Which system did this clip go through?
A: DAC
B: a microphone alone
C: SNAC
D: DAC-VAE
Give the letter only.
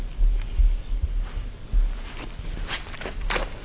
B